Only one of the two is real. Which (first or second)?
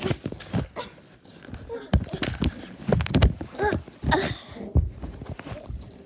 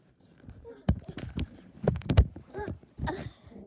first